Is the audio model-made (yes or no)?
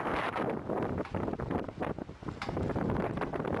yes